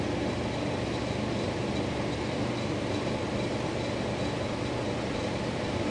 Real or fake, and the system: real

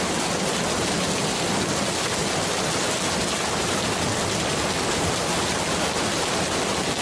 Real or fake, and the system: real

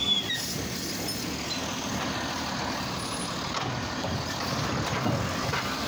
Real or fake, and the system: real